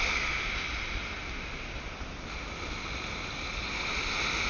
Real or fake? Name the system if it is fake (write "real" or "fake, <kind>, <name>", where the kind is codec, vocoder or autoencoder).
real